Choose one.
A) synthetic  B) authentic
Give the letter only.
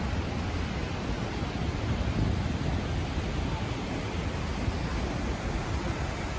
B